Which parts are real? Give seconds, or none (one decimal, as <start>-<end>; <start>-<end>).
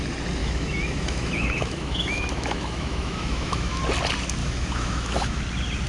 0.0-0.4; 3.8-4.4; 5.4-5.9